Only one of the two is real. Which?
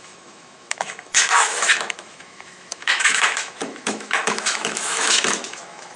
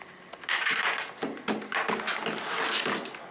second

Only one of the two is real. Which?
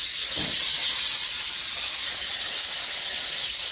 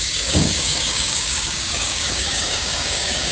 first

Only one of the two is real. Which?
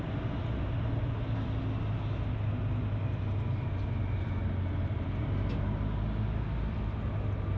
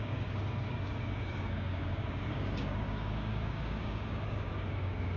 first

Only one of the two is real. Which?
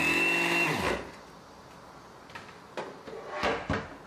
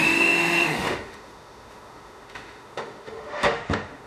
first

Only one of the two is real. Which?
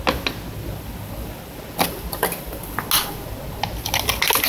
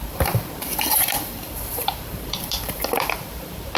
first